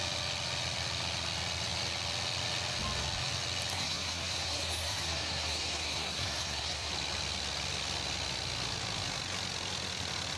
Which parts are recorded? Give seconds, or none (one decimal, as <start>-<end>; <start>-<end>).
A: 0.0-3.7; 6.9-10.4